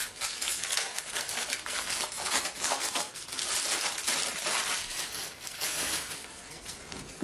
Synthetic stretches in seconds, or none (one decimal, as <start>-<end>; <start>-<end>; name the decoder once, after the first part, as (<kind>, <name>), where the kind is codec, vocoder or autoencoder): 0.0-3.4 (codec, SNAC); 4.8-7.2